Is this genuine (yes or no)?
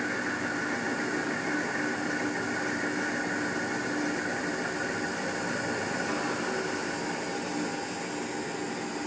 yes